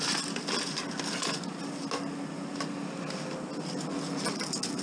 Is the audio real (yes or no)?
yes